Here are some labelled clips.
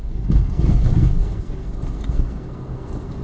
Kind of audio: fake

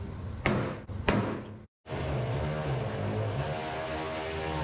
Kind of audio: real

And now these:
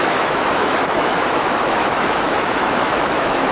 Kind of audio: fake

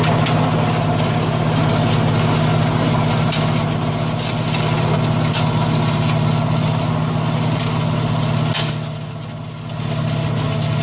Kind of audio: real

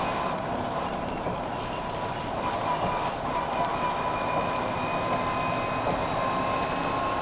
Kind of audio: real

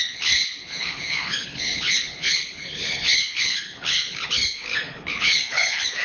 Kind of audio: fake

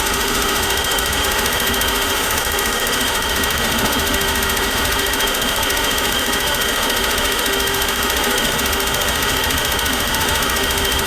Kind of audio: fake